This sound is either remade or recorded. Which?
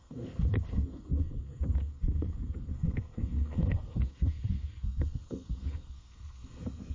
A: remade